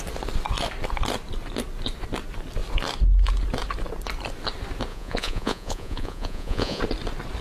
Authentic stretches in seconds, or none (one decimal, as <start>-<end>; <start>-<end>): 0.0-4.9; 6.8-7.4